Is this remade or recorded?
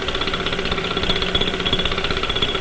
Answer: recorded